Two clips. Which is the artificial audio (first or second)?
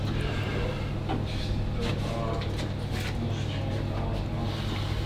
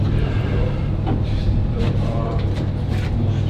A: second